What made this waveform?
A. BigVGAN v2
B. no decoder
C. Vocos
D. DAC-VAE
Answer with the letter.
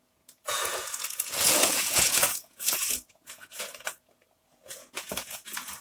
C